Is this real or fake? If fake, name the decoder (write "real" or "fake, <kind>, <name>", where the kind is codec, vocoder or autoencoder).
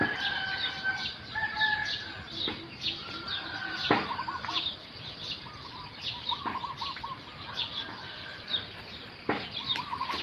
real